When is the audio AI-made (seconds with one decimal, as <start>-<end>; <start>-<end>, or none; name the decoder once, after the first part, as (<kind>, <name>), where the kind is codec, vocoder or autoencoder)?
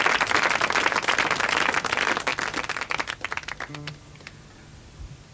none